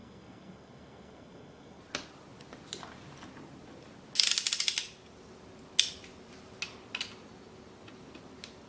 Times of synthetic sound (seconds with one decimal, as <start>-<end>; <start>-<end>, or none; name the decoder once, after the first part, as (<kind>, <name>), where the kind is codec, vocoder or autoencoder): 0.0-1.8 (codec, SNAC)